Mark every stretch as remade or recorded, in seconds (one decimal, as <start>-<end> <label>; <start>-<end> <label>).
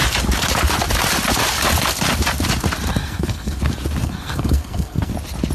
0.0-3.0 recorded; 3.0-3.6 remade; 3.6-4.0 recorded; 4.0-5.1 remade; 5.1-5.5 recorded